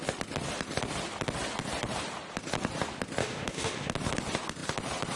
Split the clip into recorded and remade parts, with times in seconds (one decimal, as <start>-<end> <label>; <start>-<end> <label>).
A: 0.0-3.2 recorded; 3.2-3.9 remade; 3.9-5.2 recorded